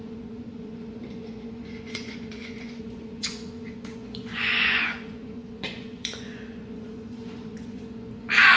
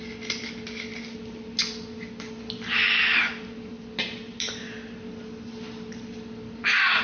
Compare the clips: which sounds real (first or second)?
second